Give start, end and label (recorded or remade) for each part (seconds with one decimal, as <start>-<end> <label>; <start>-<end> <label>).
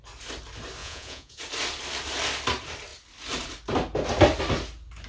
0.0-0.8 recorded; 0.8-1.4 remade; 1.4-5.1 recorded